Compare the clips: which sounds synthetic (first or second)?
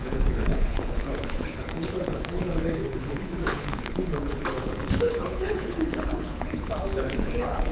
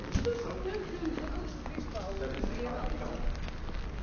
first